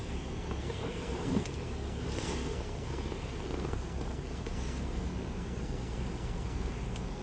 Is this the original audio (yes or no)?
no